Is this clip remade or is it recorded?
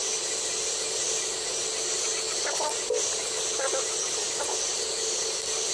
recorded